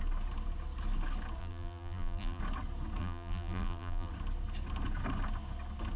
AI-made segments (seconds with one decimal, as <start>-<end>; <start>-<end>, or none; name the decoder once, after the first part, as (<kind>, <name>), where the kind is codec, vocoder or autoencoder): 1.4-2.4 (vocoder, BigVGAN v2); 3.0-4.1